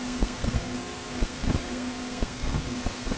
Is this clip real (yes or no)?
no